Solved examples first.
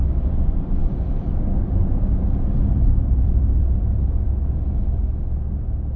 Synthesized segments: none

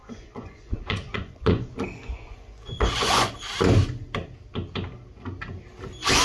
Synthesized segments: 0.0-3.3 (vocoder, Vocos)

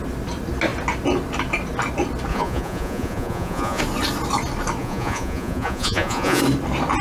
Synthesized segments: 2.3-3.8 (vocoder, Vocos); 4.8-6.4

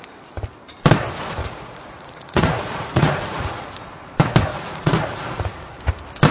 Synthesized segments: 1.4-3.7 (vocoder, Vocos); 4.5-5.8

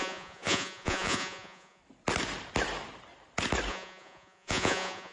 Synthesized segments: 0.0-1.8 (vocoder, Vocos); 3.7-5.1

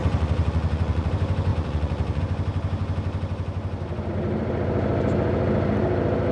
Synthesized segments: 0.0-1.1 (vocoder, Vocos); 1.5-2.2